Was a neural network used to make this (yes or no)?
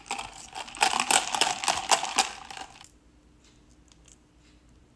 no